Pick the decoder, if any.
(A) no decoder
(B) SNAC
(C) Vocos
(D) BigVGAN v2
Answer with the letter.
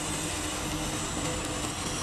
A